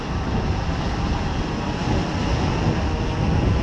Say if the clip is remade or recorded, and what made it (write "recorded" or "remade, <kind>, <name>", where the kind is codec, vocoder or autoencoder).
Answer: recorded